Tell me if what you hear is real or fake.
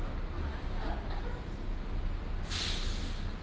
real